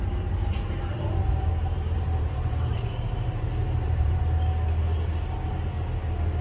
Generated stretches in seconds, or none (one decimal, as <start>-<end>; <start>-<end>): 0.4-4.2